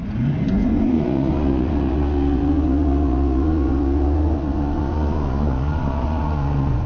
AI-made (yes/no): yes